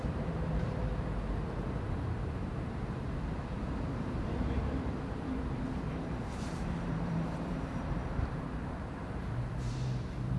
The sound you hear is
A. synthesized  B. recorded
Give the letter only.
A